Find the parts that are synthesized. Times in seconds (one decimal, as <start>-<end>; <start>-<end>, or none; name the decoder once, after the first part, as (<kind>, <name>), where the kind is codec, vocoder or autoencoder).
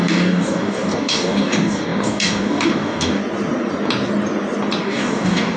0.0-3.2 (codec, DAC); 4.8-5.6